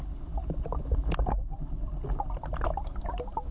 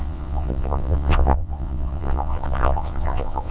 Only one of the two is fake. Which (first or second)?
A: second